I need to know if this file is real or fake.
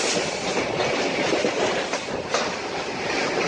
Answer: fake